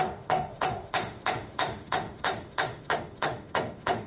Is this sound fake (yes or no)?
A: yes